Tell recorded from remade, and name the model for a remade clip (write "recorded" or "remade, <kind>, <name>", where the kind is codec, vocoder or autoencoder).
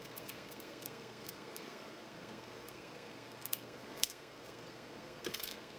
remade, codec, SNAC